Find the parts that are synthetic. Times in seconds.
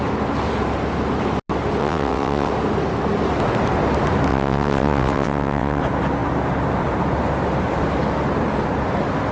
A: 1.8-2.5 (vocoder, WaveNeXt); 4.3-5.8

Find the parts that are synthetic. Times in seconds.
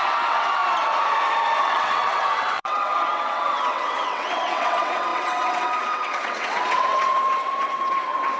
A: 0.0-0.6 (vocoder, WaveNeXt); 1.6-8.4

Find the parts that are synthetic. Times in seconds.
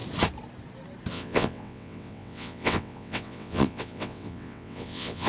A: 1.1-5.3 (vocoder, WaveNeXt)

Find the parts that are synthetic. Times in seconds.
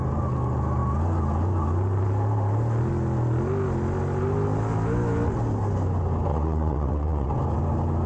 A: 6.3-7.3 (vocoder, WaveNeXt)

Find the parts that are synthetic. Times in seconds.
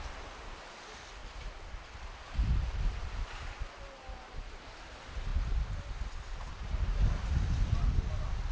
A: none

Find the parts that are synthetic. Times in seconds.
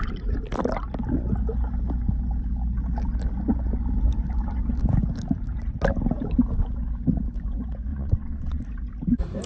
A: 7.9-8.6 (vocoder, WaveNeXt)